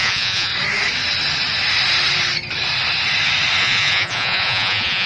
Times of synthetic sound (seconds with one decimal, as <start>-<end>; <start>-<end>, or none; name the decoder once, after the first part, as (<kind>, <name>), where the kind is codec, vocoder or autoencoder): 0.0-0.5 (vocoder, Vocos); 3.6-5.1